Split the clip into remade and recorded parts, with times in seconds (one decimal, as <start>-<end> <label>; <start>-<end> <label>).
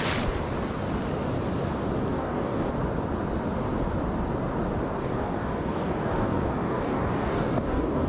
0.0-2.1 recorded; 2.1-2.7 remade; 2.7-5.0 recorded; 5.0-8.1 remade